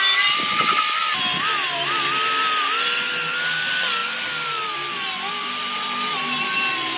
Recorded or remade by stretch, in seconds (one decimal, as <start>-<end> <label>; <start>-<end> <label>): 0.0-7.0 recorded